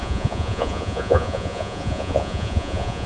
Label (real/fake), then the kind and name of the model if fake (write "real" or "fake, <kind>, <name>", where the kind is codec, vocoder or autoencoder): fake, vocoder, Vocos